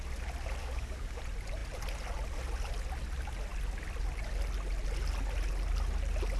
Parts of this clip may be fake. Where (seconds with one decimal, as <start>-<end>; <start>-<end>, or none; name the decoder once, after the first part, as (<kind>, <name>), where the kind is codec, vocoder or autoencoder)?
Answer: 0.6-1.2 (codec, DAC)